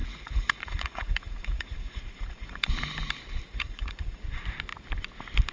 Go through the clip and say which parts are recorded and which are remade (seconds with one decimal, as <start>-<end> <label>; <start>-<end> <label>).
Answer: 0.0-2.7 remade; 2.7-3.5 recorded; 3.5-4.2 remade; 4.2-5.5 recorded